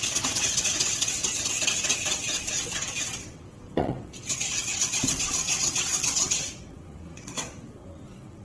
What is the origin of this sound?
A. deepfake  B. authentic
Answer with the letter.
A